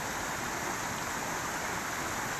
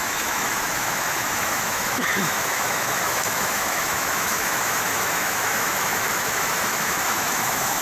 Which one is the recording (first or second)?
first